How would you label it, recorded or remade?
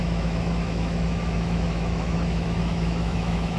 remade